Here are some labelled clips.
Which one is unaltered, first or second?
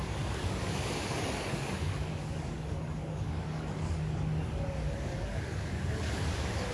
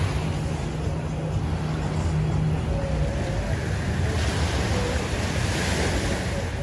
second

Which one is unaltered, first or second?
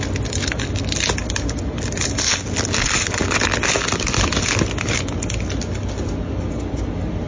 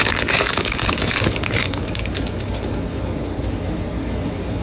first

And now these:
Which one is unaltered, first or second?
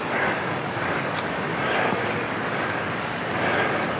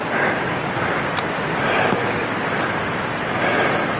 second